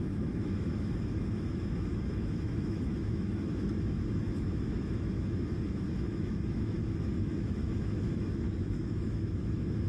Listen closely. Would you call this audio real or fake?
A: fake